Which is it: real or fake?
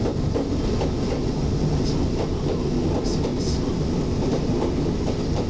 real